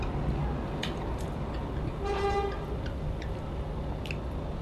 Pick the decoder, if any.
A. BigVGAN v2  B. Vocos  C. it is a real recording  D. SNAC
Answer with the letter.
C